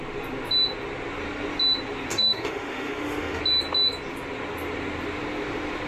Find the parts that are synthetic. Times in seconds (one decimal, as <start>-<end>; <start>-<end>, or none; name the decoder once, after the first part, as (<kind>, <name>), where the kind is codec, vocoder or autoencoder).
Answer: 2.1-3.4 (autoencoder, DAC-VAE)